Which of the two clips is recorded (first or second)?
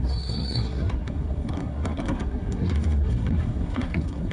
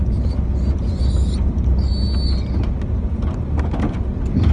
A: second